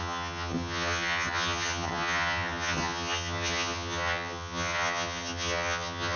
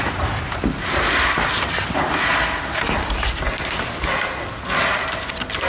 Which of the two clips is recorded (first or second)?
second